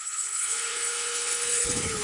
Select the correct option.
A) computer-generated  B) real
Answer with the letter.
A